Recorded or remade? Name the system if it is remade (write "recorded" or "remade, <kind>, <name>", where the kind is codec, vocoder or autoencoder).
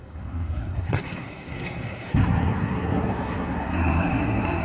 remade, codec, SNAC